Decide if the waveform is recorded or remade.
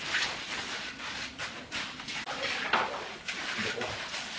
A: recorded